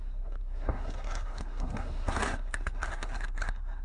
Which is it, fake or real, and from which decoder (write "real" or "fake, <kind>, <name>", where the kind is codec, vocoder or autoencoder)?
fake, codec, SNAC